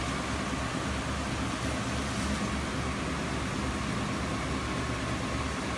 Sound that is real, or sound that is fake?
real